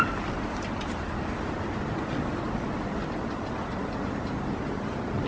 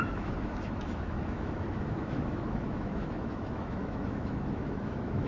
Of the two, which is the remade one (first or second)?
second